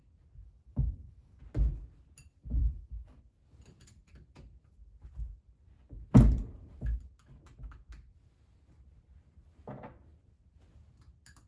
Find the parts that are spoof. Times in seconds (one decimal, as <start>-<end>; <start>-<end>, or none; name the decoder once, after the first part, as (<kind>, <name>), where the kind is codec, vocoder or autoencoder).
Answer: 0.4-1.4 (autoencoder, DAC-VAE); 2.6-3.2